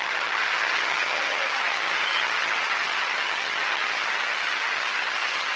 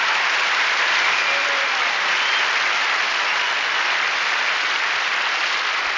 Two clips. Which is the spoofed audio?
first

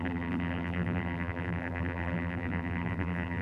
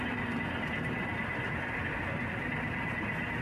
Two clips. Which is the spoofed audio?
first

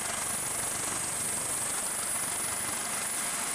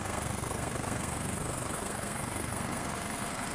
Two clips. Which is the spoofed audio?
second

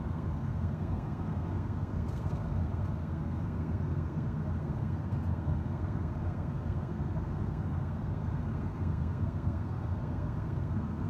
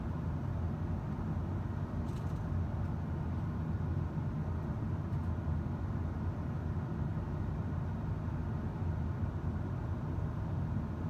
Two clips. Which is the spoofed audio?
first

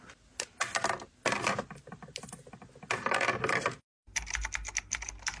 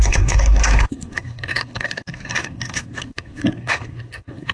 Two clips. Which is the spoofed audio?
second